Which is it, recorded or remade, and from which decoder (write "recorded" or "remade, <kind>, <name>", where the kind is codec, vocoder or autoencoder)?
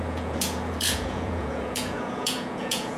remade, vocoder, Vocos